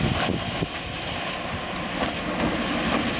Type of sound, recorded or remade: recorded